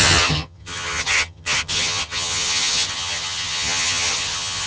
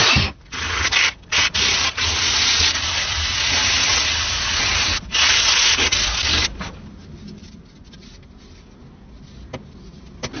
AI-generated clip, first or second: first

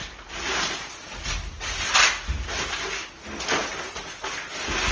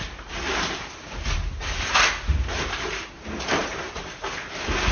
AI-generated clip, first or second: second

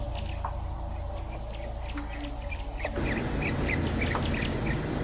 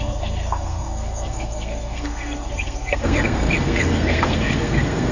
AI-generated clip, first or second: second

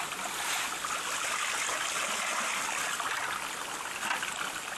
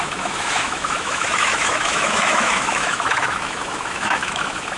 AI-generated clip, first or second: second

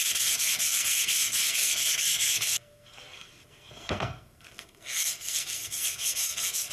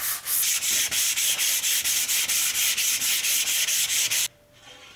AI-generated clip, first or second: first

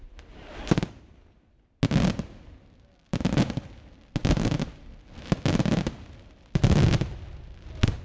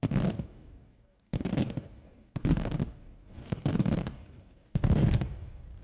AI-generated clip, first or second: second